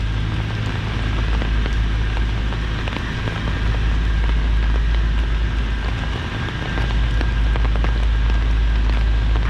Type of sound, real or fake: real